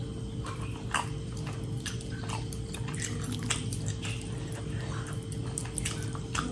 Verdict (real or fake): real